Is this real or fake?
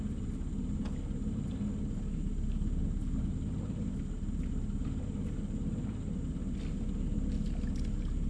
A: real